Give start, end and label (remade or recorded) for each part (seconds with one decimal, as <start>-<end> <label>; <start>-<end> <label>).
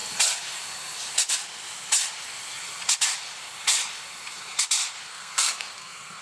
0.0-5.1 recorded; 5.1-6.2 remade